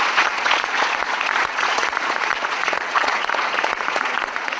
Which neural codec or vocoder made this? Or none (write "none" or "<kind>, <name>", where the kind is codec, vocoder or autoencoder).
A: vocoder, Vocos